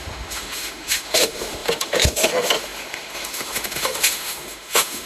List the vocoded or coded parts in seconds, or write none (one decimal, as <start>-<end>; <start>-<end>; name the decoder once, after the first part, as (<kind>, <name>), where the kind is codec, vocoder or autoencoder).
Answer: 0.0-5.1 (autoencoder, DAC-VAE)